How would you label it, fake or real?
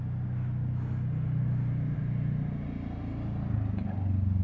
real